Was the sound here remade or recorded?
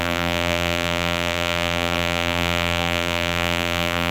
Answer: remade